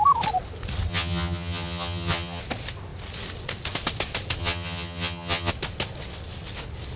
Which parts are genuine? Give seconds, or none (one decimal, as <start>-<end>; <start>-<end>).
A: 0.0-0.9; 2.4-4.4; 5.5-7.0